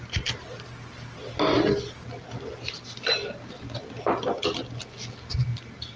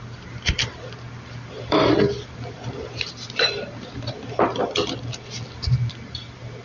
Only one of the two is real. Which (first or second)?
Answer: first